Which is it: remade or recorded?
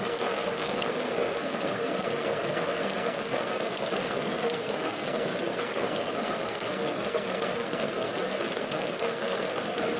remade